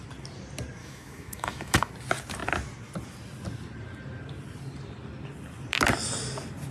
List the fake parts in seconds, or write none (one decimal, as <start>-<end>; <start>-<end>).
0.8-1.9